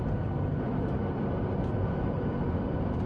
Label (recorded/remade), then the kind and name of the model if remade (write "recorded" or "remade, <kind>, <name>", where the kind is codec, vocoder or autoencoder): recorded